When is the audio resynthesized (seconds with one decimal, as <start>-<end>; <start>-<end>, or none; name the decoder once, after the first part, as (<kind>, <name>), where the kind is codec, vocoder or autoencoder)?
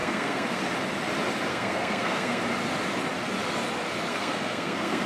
0.0-0.6 (codec, SNAC); 1.5-2.4; 4.1-5.1